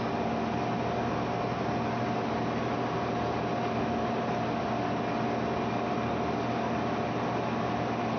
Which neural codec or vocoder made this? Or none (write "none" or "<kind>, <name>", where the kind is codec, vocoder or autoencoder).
none